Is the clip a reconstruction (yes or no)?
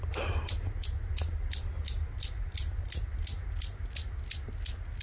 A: no